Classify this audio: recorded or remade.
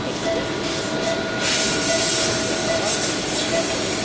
recorded